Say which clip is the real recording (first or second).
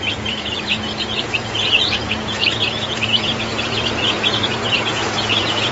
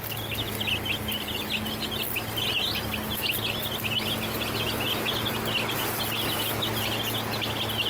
second